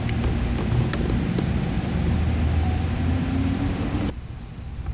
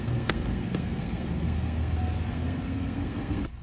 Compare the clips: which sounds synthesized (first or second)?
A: second